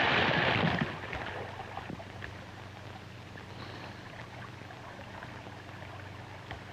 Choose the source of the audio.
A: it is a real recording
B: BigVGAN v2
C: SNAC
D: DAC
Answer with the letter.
A